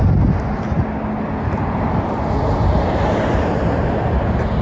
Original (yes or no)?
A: yes